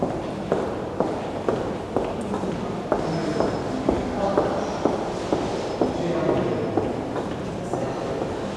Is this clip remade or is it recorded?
recorded